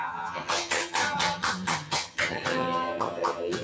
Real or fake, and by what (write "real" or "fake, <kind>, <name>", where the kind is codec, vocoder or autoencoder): fake, vocoder, HiFi-GAN